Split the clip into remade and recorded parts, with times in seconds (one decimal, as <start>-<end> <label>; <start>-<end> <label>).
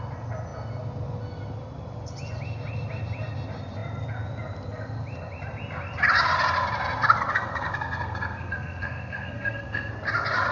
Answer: 0.0-7.3 recorded; 7.3-9.9 remade; 9.9-10.5 recorded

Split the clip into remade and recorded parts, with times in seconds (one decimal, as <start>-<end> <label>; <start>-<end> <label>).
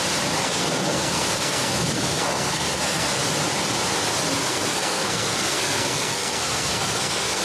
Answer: 0.0-0.4 recorded; 0.4-3.2 remade; 3.2-4.5 recorded; 4.5-7.4 remade